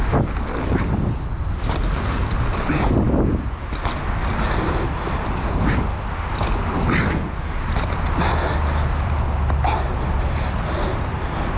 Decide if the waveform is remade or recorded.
recorded